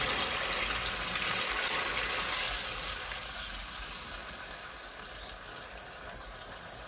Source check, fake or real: real